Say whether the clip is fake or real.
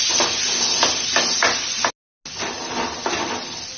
real